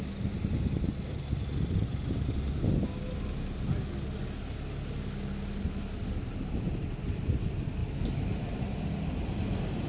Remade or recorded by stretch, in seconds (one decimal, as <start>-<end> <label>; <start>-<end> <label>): 0.0-9.9 recorded